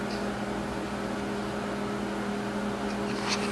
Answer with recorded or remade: recorded